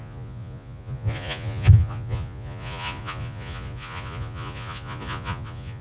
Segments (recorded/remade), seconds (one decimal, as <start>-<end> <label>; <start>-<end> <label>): 0.0-5.8 remade